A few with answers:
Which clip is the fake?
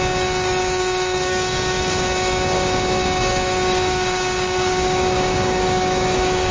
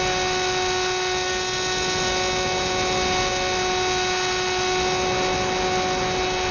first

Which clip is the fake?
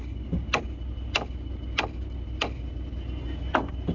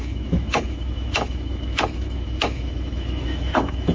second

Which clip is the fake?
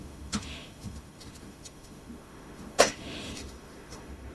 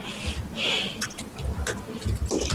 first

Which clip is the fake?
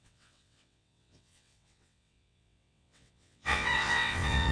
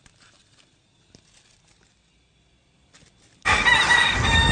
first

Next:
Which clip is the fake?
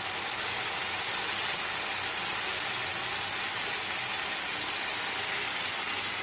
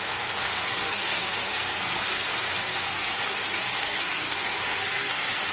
second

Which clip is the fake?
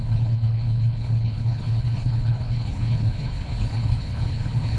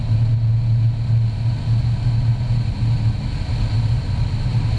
first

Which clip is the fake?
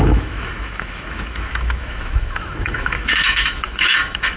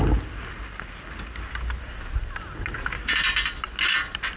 first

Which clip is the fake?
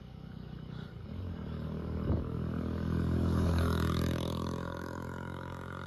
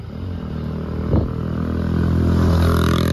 first